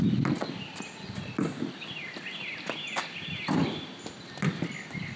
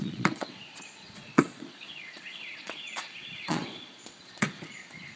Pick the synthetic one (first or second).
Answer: second